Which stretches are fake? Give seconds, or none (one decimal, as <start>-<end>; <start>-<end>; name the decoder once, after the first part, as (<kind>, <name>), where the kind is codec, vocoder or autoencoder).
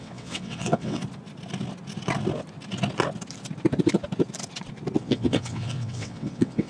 0.0-1.0 (vocoder, WaveNeXt); 5.0-6.7